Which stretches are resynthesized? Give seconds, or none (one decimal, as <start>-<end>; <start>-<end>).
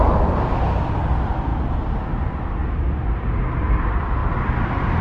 none